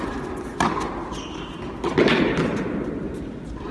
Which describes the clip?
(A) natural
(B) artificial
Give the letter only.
A